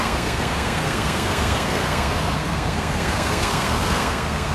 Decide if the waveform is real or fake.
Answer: fake